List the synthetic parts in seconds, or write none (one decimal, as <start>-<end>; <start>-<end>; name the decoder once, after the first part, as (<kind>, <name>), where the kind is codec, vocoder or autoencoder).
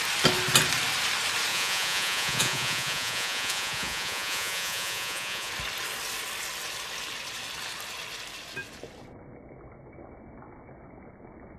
1.5-5.5 (vocoder, Vocos)